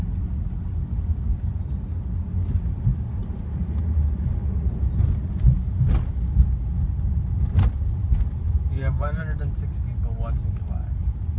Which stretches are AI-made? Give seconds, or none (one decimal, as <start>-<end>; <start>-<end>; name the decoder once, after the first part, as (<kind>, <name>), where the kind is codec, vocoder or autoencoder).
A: 3.2-4.5 (vocoder, BigVGAN v2); 8.0-9.2